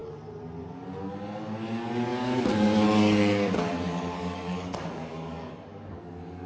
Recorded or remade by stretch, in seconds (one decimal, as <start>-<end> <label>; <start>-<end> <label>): 0.0-1.0 recorded; 1.0-6.5 remade